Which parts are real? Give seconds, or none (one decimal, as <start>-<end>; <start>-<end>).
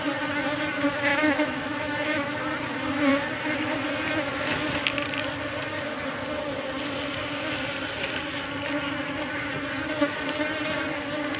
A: 0.0-1.1; 2.4-11.4